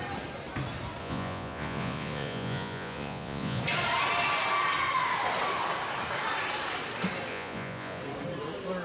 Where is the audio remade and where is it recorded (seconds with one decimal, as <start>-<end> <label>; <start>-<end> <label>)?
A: 0.0-1.0 recorded; 1.0-3.6 remade; 3.6-7.3 recorded; 7.3-8.0 remade; 8.0-8.8 recorded